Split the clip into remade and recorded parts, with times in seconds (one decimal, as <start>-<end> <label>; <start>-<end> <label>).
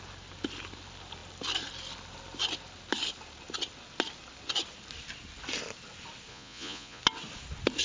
0.0-6.3 recorded; 6.3-7.0 remade; 7.0-7.8 recorded